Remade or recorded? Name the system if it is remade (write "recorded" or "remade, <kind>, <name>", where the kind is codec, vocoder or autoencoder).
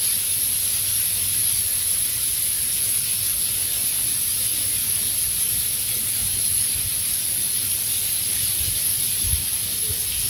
recorded